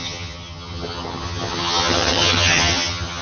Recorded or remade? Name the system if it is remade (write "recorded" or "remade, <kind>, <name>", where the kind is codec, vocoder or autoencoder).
remade, vocoder, HiFi-GAN